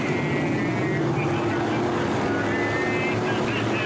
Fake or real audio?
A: real